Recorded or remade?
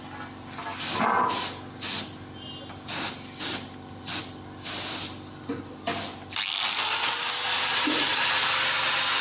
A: recorded